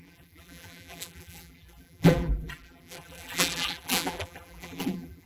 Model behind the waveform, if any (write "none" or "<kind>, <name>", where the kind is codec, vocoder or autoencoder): vocoder, BigVGAN v2